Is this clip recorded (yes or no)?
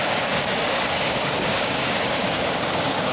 no